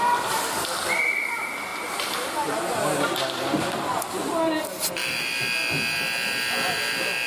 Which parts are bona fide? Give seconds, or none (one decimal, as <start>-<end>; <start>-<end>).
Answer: 0.0-7.3